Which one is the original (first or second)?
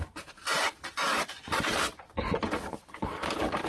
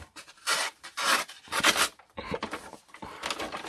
second